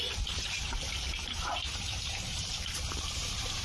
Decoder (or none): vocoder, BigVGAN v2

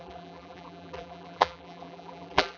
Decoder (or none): vocoder, BigVGAN v2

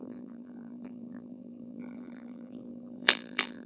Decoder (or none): vocoder, BigVGAN v2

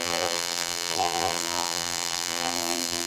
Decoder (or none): vocoder, BigVGAN v2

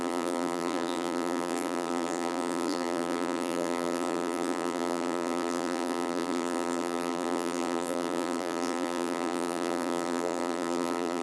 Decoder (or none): vocoder, BigVGAN v2